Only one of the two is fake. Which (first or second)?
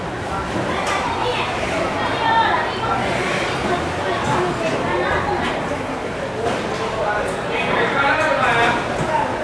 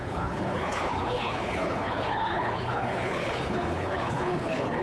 second